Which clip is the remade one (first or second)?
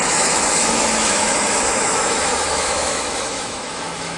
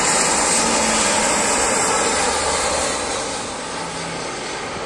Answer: first